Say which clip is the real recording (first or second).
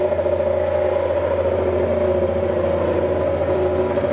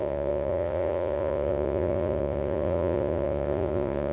first